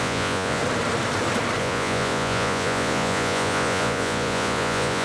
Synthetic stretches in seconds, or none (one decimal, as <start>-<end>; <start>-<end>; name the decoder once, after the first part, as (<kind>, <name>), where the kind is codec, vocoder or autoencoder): 0.0-0.6 (vocoder, Vocos); 1.6-5.0